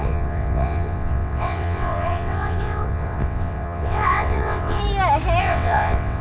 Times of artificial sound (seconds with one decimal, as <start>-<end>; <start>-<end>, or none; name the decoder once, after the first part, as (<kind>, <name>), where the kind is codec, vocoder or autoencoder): 0.0-4.8 (vocoder, WaveNeXt); 5.4-6.2